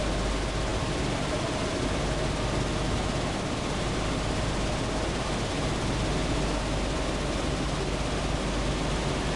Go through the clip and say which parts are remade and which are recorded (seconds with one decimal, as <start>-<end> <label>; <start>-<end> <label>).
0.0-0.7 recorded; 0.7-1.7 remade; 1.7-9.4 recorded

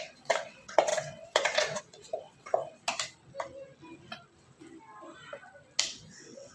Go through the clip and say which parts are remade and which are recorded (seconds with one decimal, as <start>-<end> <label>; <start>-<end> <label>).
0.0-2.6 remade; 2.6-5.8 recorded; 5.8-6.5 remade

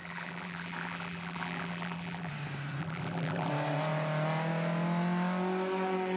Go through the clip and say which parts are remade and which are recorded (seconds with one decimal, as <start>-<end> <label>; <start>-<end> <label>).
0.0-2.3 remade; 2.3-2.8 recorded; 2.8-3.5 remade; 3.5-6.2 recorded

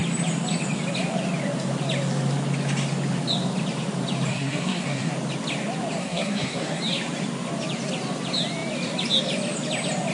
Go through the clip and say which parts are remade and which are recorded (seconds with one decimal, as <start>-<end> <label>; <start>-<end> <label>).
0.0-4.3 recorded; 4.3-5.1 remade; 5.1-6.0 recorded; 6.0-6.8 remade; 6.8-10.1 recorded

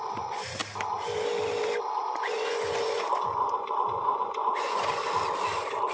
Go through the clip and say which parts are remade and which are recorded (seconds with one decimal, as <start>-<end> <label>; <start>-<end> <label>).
0.0-0.6 remade; 0.6-2.1 recorded; 2.1-5.0 remade; 5.0-5.9 recorded

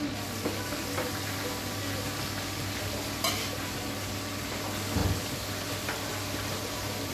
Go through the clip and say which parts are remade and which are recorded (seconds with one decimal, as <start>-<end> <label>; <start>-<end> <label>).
0.0-7.1 recorded